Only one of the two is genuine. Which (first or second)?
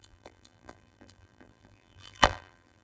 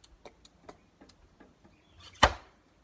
second